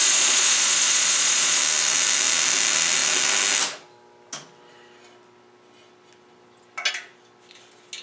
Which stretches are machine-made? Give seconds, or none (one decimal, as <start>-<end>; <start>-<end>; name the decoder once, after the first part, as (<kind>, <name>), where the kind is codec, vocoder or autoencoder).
0.0-1.6 (vocoder, Vocos)